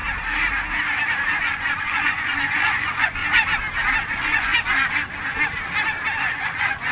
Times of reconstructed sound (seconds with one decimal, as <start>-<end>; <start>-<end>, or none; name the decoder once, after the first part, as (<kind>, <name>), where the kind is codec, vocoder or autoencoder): 1.4-3.2 (vocoder, Vocos); 4.1-4.5; 6.2-6.9